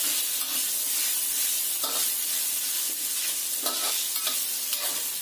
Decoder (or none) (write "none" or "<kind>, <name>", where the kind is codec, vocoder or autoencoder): none